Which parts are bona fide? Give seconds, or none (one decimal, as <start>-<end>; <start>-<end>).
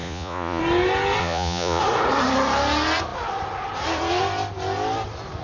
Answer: 0.6-1.2; 1.8-5.4